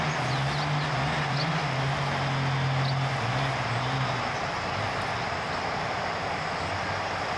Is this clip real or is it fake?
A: real